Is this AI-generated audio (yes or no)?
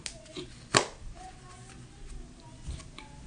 no